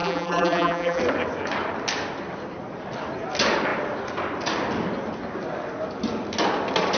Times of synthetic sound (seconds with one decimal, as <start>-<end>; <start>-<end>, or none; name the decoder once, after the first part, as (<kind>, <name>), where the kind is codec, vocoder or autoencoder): 0.0-1.0 (vocoder, BigVGAN v2)